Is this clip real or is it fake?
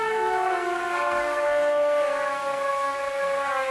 fake